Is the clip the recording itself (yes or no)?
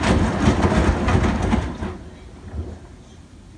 yes